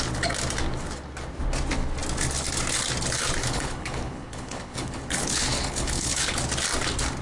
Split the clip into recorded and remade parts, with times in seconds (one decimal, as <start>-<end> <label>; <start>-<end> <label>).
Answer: 0.0-3.4 recorded; 3.4-6.4 remade; 6.4-7.2 recorded